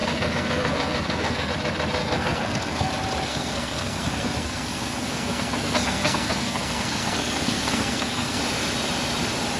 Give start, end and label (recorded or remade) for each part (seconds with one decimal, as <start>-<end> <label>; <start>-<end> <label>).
0.0-1.5 remade; 1.5-2.0 recorded; 2.0-2.9 remade; 2.9-3.3 recorded; 3.3-8.4 remade; 8.4-9.6 recorded